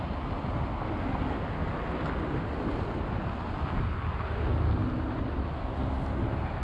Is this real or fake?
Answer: real